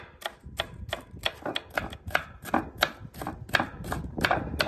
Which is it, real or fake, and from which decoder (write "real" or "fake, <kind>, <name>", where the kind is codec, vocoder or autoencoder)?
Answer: real